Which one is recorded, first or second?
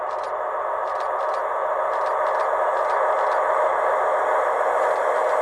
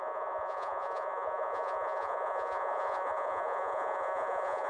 first